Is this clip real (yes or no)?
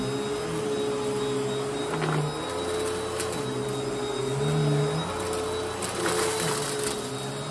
yes